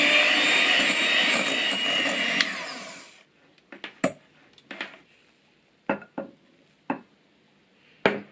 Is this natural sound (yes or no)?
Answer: yes